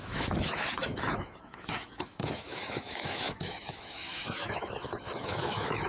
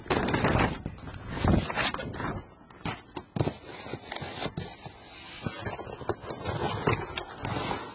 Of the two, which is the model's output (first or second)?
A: first